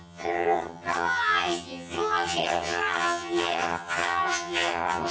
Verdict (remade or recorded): remade